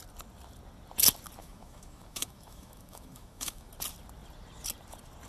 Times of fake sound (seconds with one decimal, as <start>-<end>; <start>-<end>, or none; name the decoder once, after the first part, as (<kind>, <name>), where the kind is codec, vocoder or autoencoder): 1.4-3.7 (autoencoder, DAC-VAE)